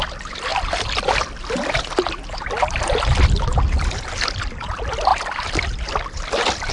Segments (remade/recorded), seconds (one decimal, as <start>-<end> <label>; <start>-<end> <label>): 0.0-0.5 recorded; 0.5-1.1 remade; 1.1-6.7 recorded